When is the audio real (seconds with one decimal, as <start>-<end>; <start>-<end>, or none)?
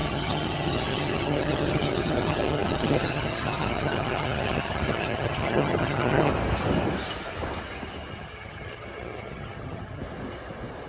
6.3-8.1; 10.0-10.9